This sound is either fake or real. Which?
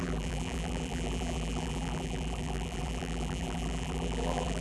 fake